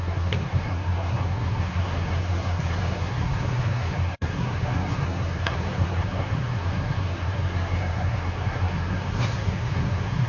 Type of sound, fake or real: fake